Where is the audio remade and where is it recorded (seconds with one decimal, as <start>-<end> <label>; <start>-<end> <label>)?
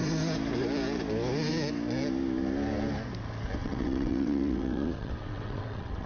0.0-3.6 recorded; 3.6-6.1 remade